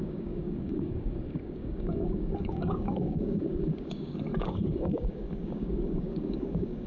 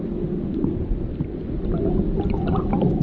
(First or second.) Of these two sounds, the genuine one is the second